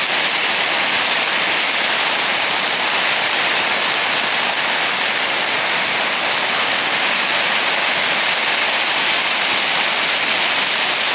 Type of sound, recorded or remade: recorded